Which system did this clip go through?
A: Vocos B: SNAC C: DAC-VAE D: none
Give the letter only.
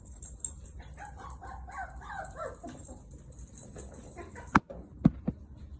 D